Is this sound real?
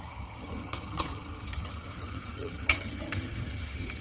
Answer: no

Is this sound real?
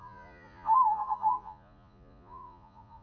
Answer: no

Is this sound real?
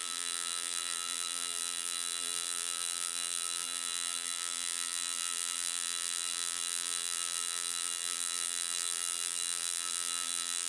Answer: no